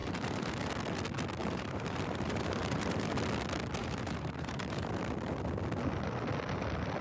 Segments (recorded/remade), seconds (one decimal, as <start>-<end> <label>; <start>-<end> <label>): 0.0-0.7 remade; 0.7-1.4 recorded; 1.4-3.1 remade; 3.1-3.8 recorded; 3.8-4.9 remade; 4.9-7.0 recorded